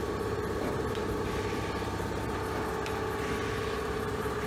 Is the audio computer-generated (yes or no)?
no